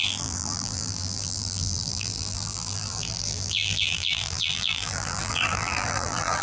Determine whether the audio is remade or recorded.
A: remade